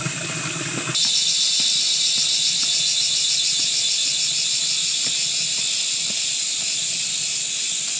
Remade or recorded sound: recorded